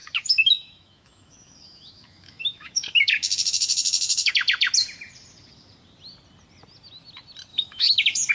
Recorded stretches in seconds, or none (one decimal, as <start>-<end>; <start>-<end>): 4.3-7.5